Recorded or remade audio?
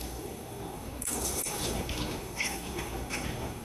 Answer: remade